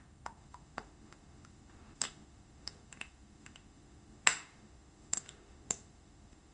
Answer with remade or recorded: remade